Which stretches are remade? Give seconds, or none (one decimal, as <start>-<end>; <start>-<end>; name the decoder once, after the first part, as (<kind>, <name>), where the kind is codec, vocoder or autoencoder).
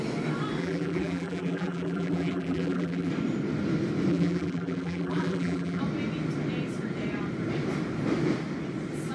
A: 0.6-3.1 (vocoder, BigVGAN v2); 4.1-5.8